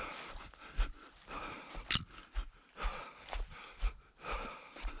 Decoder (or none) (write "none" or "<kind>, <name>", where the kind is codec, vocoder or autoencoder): none